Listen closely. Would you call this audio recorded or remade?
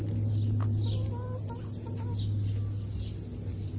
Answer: recorded